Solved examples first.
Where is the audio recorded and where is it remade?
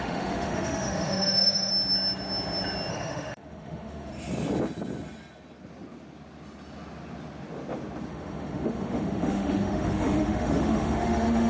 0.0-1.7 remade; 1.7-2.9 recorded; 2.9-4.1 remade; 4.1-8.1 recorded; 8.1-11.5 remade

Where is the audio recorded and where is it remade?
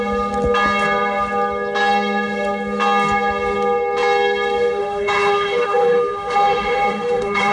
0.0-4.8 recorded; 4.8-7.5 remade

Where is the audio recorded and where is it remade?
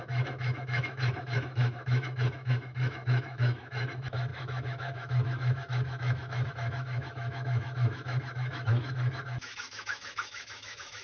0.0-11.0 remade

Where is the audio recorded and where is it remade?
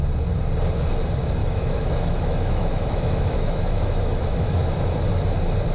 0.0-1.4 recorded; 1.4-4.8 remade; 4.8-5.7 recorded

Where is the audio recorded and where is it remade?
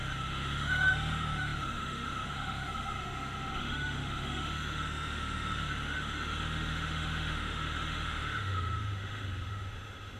0.0-10.2 remade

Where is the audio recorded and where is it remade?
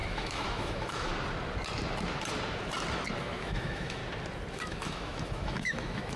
0.0-1.1 remade; 1.1-3.2 recorded; 3.2-4.0 remade; 4.0-4.5 recorded; 4.5-6.2 remade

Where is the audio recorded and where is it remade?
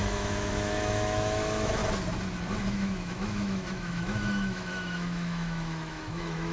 0.0-1.8 remade; 1.8-2.7 recorded; 2.7-6.5 remade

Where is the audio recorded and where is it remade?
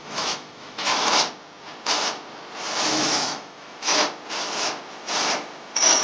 0.0-0.9 remade; 0.9-2.8 recorded; 2.8-3.9 remade; 3.9-6.0 recorded